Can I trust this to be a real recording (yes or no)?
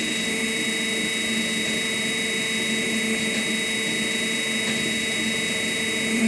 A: yes